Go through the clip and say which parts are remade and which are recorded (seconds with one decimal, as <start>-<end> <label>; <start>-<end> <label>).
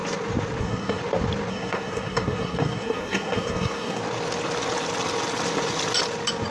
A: 0.0-0.6 recorded; 0.6-1.0 remade; 1.0-1.5 recorded; 1.5-4.0 remade; 4.0-6.5 recorded